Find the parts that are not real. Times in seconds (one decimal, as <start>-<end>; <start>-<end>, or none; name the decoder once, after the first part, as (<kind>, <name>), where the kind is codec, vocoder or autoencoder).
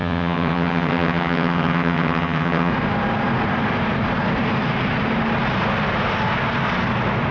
0.0-2.7 (vocoder, HiFi-GAN)